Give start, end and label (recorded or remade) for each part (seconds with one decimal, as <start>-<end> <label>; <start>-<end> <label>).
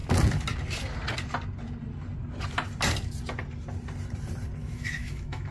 0.0-4.6 recorded; 4.6-5.5 remade